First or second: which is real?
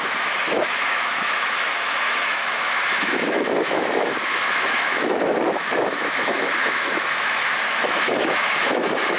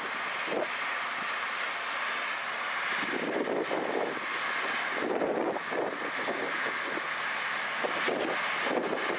second